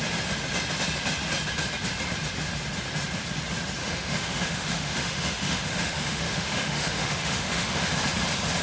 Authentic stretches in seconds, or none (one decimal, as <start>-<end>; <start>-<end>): 0.0-3.8; 7.9-8.6